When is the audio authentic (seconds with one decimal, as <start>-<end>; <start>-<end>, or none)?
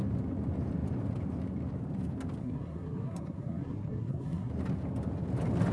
0.0-2.4; 4.5-5.7